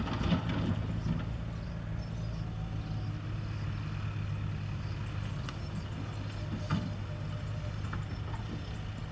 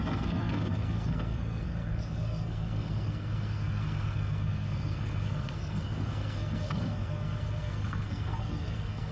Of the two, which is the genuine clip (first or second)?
first